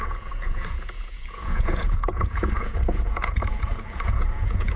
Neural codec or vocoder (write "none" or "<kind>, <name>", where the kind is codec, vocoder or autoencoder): vocoder, Vocos